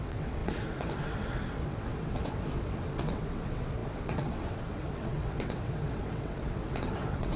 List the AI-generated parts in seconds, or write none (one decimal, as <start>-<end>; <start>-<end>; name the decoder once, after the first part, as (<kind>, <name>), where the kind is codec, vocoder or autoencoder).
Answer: 0.0-7.4 (vocoder, WaveNeXt)